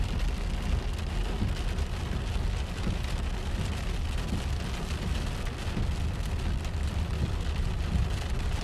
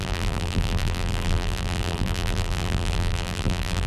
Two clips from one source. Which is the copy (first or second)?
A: second